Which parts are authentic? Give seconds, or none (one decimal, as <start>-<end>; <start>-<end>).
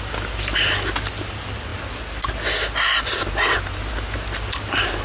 0.0-5.0